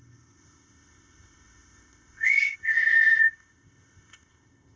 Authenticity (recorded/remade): remade